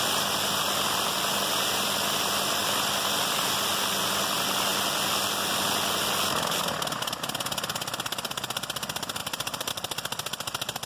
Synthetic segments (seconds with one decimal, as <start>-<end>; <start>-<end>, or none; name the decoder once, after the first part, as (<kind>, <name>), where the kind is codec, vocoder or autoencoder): 2.6-3.7 (vocoder, BigVGAN v2); 9.2-9.7